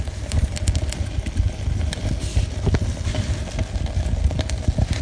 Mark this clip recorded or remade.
recorded